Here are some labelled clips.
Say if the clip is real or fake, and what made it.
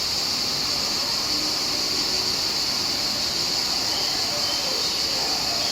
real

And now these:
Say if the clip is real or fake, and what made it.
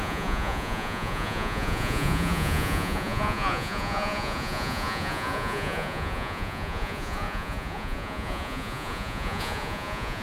fake, vocoder, Vocos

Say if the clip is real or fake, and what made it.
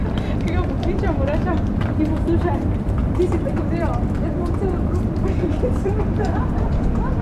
fake, vocoder, BigVGAN v2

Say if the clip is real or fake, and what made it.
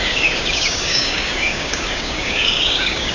fake, codec, DAC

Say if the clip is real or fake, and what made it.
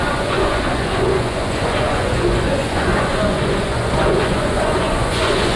fake, vocoder, Vocos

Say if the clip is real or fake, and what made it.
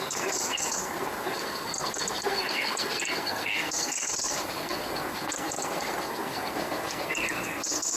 fake, codec, SNAC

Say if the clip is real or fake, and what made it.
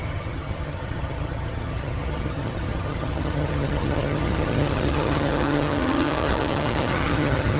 fake, vocoder, HiFi-GAN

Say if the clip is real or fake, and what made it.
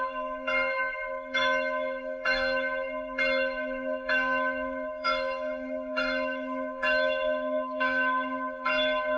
fake, autoencoder, DAC-VAE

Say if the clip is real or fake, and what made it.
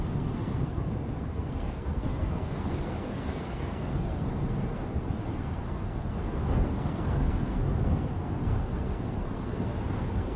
fake, codec, SNAC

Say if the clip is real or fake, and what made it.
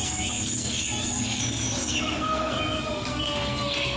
fake, codec, SNAC